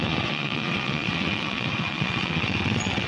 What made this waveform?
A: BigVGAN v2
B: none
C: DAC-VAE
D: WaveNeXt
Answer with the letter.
D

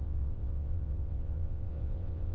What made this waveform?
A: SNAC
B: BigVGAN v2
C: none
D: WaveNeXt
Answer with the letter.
D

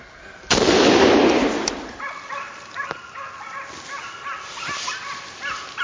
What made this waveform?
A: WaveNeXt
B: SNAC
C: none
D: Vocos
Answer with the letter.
C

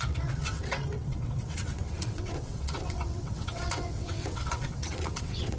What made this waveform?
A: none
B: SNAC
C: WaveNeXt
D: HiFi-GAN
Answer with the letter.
C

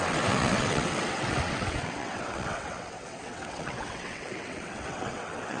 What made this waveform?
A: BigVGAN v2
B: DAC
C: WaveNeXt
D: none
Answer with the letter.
C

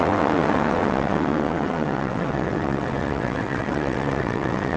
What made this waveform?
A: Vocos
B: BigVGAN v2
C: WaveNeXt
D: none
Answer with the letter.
C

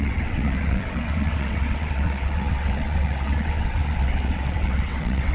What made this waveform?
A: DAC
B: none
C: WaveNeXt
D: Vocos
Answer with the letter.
C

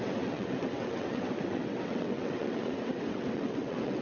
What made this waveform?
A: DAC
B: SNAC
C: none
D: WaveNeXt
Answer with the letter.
D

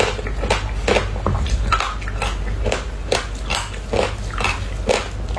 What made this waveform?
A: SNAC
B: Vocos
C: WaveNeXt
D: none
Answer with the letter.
D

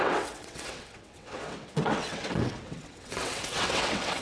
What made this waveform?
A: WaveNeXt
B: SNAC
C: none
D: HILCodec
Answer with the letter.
A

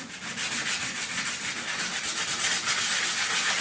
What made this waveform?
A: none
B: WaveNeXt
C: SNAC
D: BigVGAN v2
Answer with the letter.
A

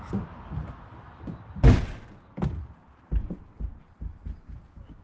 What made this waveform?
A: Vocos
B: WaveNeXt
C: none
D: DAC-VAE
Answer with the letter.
C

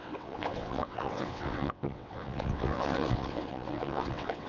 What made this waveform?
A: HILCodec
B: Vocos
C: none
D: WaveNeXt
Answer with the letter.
D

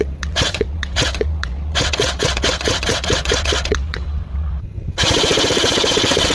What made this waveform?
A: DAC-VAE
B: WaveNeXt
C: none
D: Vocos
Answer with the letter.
B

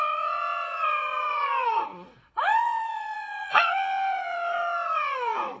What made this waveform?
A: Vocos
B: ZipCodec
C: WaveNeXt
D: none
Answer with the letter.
C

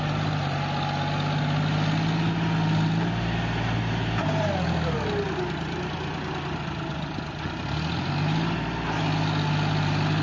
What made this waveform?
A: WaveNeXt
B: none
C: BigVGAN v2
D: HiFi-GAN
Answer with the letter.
B